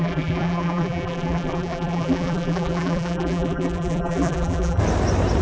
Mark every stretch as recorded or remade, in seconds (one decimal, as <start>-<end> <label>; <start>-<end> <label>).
0.0-4.8 remade; 4.8-5.4 recorded